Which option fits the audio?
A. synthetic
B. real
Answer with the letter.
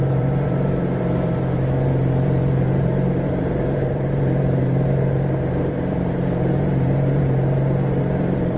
A